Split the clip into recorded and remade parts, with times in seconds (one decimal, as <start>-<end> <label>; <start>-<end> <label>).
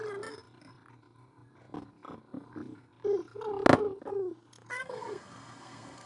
0.0-4.7 recorded; 4.7-6.1 remade